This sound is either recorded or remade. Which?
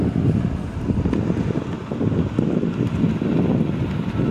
recorded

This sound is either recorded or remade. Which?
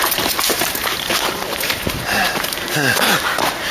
remade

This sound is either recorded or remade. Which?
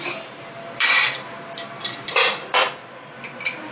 remade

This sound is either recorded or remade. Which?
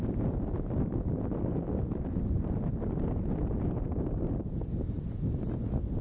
recorded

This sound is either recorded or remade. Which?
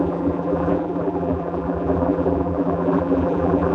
remade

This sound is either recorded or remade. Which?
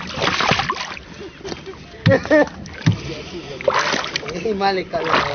recorded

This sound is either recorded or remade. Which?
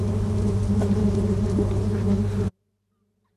recorded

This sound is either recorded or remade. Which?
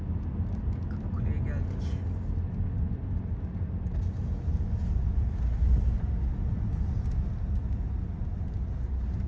recorded